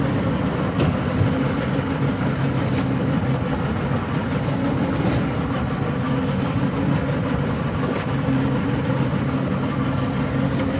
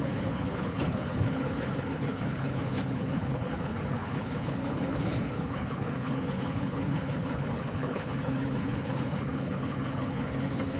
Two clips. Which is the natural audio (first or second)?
first